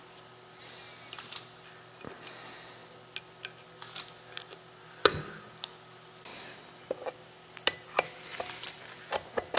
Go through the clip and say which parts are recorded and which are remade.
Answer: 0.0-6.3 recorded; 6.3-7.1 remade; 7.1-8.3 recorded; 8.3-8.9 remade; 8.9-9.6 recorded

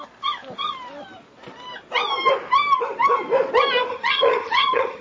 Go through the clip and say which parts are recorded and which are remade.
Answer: 0.0-3.9 recorded; 3.9-5.0 remade

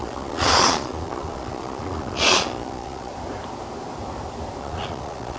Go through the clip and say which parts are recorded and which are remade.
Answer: 0.0-3.1 remade; 3.1-4.6 recorded; 4.6-5.4 remade

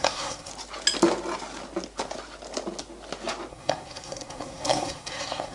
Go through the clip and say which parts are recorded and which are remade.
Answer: 0.0-0.5 remade; 0.5-3.5 recorded; 3.5-5.5 remade